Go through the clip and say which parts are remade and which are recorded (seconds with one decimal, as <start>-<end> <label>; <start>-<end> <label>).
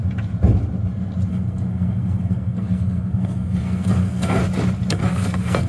0.0-1.3 recorded; 1.3-4.4 remade; 4.4-4.9 recorded; 4.9-5.7 remade